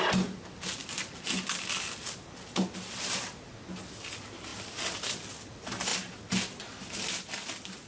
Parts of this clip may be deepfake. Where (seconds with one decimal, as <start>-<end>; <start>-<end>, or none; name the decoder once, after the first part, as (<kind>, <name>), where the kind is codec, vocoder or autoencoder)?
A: none